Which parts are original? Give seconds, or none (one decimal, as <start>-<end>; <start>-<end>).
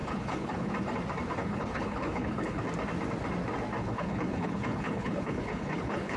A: 0.7-1.4; 2.6-3.8